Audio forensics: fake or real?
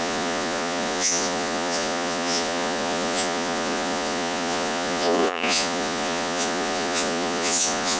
fake